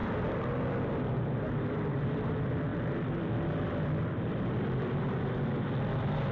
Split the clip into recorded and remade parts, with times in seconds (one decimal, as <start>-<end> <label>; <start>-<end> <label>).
0.0-2.3 remade; 2.3-2.7 recorded; 2.7-6.3 remade